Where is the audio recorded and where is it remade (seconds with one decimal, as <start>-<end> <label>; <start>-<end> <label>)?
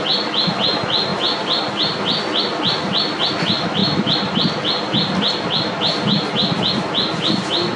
0.0-3.8 recorded; 3.8-6.6 remade; 6.6-7.8 recorded